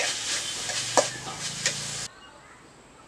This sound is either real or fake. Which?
real